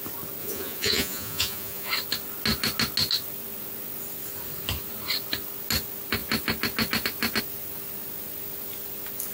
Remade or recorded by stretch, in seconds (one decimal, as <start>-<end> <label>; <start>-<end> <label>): 0.0-0.4 recorded; 0.4-1.9 remade; 1.9-9.3 recorded